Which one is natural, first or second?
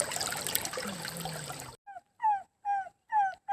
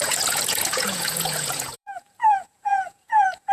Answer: first